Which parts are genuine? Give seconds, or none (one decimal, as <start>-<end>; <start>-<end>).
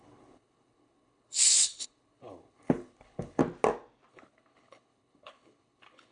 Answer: 3.4-4.1